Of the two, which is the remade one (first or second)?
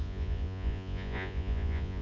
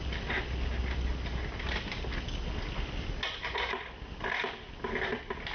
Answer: first